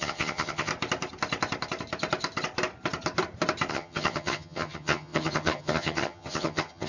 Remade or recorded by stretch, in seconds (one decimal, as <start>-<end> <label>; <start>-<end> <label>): 0.0-0.7 remade; 0.7-3.7 recorded; 3.7-6.9 remade